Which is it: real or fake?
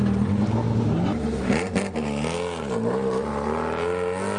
real